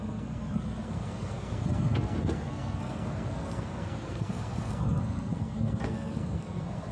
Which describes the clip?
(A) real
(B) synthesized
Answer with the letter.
B